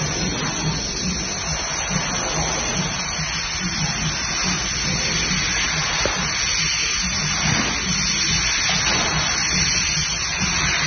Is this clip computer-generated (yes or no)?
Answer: no